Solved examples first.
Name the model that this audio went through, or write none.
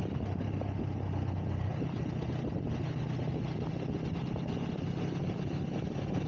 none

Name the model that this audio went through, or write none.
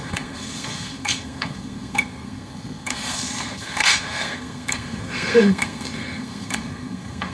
codec, SNAC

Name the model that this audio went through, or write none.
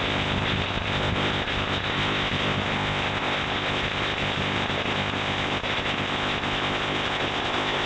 codec, ZipCodec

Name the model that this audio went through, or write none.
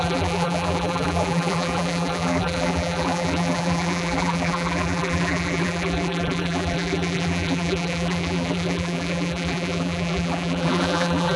vocoder, BigVGAN v2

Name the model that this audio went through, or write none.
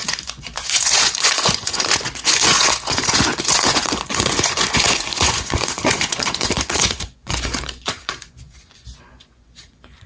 vocoder, Vocos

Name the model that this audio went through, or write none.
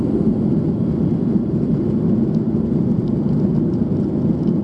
none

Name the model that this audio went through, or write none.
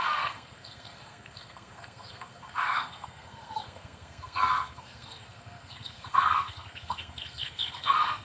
codec, SNAC